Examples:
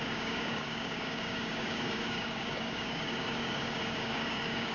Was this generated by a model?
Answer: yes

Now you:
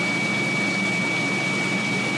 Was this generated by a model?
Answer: no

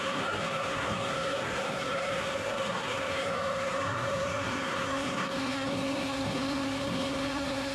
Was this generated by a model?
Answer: yes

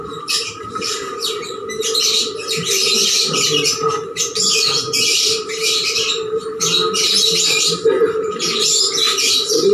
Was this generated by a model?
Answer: yes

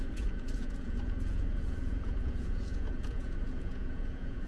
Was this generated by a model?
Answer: yes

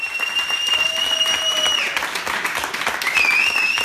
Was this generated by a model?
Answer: no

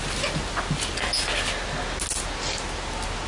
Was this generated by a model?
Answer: no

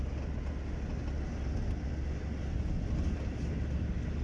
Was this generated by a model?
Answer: no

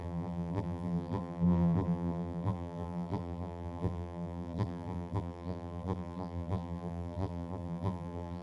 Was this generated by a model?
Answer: yes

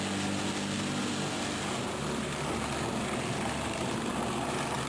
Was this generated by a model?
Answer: no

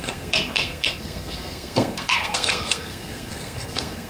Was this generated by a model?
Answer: yes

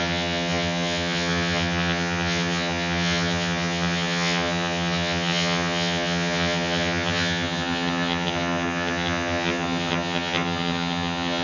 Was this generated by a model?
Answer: yes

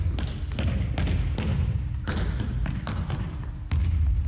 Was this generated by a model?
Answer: no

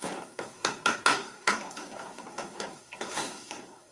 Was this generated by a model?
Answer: yes